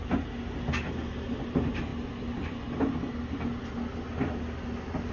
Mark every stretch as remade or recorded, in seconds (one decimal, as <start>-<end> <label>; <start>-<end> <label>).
0.0-5.1 recorded